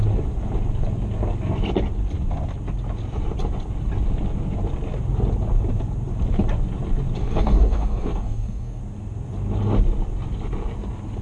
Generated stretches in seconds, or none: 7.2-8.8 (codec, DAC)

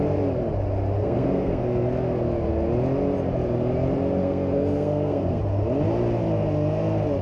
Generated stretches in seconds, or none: 1.0-1.6 (codec, SNAC); 4.2-5.4

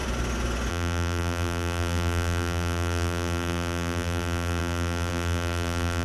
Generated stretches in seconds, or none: 0.7-6.0 (vocoder, BigVGAN v2)

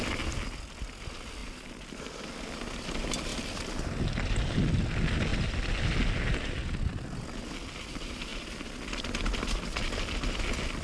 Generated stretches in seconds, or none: 1.4-2.3 (vocoder, BigVGAN v2); 3.3-4.0

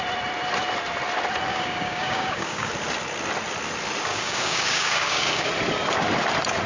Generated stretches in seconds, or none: 1.5-2.7 (codec, DAC); 4.1-5.5

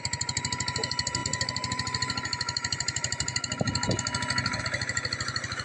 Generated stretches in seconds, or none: none